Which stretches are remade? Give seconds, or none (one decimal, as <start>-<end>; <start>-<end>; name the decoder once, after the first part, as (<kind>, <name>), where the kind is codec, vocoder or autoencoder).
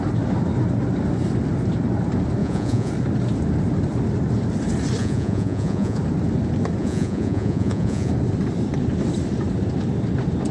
2.4-2.9 (vocoder, Vocos); 5.0-6.0; 6.8-8.1